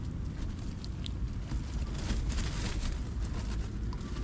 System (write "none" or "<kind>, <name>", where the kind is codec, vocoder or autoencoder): none